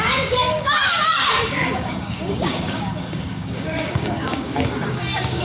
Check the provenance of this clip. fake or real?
fake